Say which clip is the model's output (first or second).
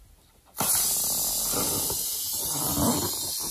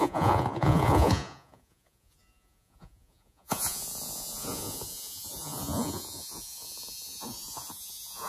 second